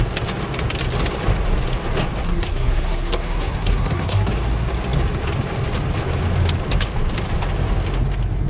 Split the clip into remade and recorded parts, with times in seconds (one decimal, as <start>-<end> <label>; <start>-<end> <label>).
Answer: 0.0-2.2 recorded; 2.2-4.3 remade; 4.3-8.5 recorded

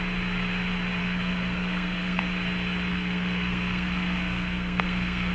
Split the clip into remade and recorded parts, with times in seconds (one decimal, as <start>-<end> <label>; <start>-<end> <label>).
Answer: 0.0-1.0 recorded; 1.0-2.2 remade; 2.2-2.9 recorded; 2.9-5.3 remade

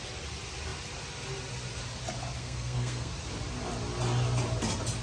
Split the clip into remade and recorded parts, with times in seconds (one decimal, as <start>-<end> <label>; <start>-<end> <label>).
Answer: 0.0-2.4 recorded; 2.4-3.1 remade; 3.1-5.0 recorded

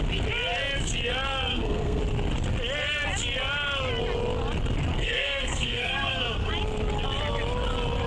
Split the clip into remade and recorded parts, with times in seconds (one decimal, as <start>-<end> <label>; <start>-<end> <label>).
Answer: 0.0-1.5 recorded; 1.5-2.0 remade; 2.0-4.9 recorded; 4.9-6.5 remade; 6.5-8.1 recorded